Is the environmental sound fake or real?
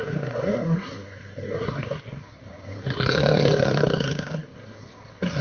fake